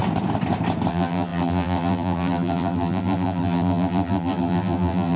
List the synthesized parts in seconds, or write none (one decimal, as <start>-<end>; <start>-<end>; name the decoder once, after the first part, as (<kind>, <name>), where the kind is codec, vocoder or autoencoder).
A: 0.9-5.2 (vocoder, BigVGAN v2)